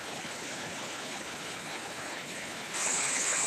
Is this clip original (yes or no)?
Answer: no